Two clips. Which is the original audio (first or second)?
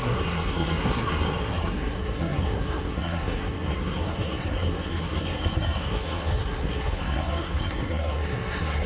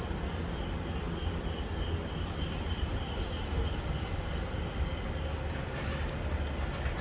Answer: second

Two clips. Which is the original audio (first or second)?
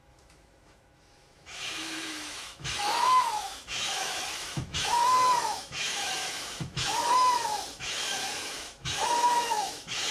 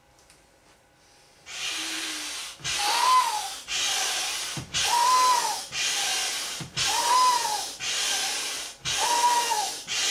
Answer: second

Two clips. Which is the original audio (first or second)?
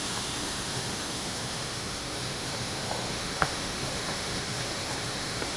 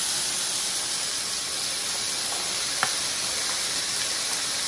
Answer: second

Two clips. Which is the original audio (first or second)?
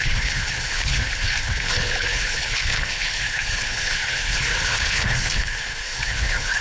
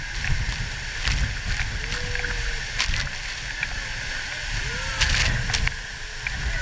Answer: second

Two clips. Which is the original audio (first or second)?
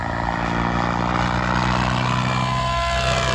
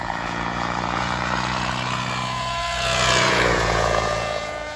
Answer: first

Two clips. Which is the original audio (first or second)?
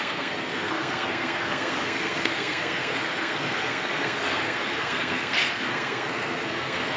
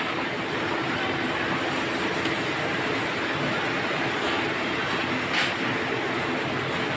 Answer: second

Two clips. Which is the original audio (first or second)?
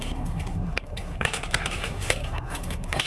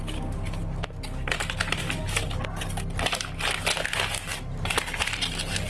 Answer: second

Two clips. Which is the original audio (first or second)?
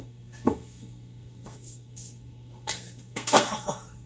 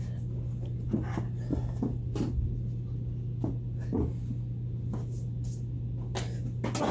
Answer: second